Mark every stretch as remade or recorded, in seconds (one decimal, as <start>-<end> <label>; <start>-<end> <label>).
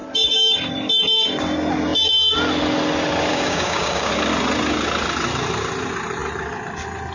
0.0-3.3 recorded; 3.3-4.1 remade; 4.1-7.1 recorded